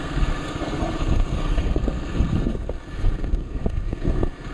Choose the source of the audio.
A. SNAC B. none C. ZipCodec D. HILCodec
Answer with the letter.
A